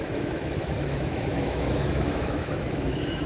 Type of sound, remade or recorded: remade